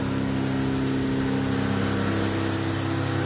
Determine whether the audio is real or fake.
real